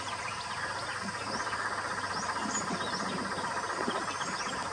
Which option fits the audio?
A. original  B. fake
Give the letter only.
A